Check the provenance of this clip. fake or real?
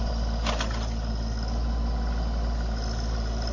real